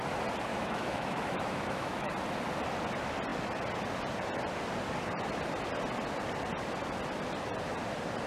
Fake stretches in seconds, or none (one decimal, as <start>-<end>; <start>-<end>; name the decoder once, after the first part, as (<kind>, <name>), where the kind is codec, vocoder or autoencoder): 0.5-2.1 (autoencoder, DAC-VAE)